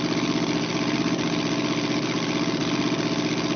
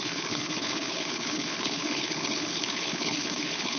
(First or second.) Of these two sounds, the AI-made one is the second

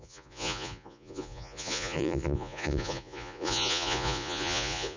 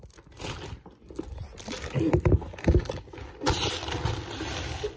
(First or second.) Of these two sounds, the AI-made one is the first